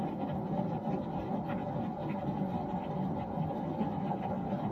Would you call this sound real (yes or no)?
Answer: yes